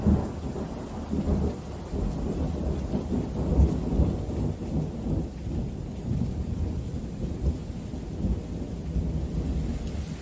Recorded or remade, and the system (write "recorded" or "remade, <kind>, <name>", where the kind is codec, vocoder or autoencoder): recorded